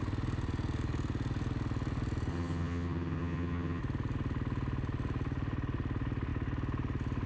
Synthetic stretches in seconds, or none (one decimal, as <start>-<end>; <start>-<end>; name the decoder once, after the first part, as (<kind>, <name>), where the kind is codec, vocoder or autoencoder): 2.3-3.8 (vocoder, HiFi-GAN)